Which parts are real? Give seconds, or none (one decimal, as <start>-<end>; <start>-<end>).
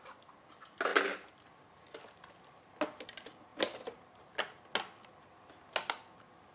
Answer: 0.0-6.5